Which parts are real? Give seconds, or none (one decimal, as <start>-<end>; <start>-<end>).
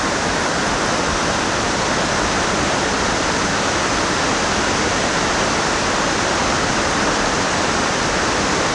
0.0-6.4; 7.9-8.7